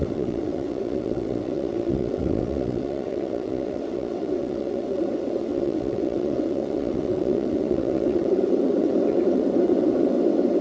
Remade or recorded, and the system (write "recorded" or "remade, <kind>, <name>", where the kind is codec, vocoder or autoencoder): remade, vocoder, WaveNeXt